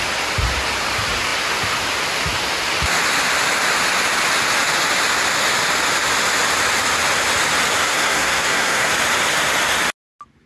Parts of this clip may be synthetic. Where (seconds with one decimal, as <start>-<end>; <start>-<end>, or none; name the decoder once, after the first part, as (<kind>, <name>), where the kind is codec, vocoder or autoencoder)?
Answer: 7.8-8.9 (codec, SNAC)